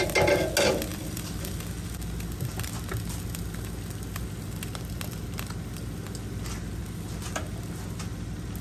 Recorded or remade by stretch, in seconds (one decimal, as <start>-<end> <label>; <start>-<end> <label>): 0.0-0.9 recorded; 0.9-1.6 remade; 1.6-8.6 recorded

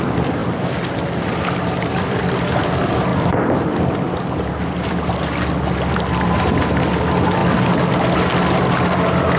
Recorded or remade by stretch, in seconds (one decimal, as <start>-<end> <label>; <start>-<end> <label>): 0.0-0.4 recorded; 0.4-2.2 remade; 2.2-3.1 recorded; 3.1-4.1 remade; 4.1-7.4 recorded; 7.4-8.0 remade; 8.0-9.4 recorded

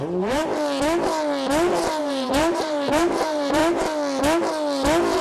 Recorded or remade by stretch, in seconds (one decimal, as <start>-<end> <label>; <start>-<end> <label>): 0.0-0.4 remade; 0.4-2.0 recorded; 2.0-3.6 remade; 3.6-5.2 recorded

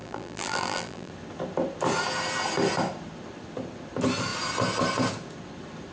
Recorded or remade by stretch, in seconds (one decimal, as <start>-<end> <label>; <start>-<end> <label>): 0.0-1.1 remade; 1.1-5.9 recorded